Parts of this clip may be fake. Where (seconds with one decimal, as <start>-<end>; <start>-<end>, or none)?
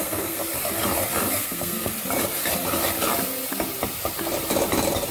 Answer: 0.0-0.4; 1.3-1.9